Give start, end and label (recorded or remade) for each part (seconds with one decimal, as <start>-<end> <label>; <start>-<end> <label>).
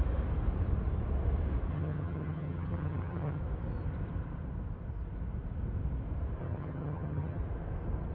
0.0-1.7 recorded; 1.7-3.4 remade; 3.4-6.4 recorded; 6.4-7.4 remade; 7.4-8.1 recorded